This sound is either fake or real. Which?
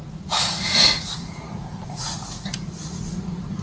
fake